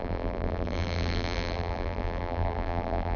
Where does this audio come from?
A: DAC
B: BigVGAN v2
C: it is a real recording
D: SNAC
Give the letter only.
B